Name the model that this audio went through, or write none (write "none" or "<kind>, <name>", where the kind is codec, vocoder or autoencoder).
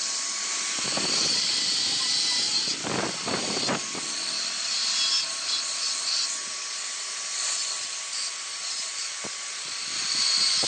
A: none